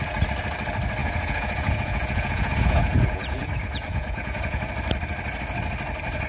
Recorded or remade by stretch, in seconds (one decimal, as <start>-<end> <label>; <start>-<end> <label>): 0.0-1.0 recorded; 1.0-4.7 remade; 4.7-6.3 recorded